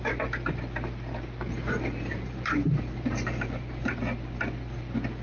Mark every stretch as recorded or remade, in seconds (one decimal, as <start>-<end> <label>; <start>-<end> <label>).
0.0-2.1 recorded; 2.1-4.0 remade; 4.0-5.2 recorded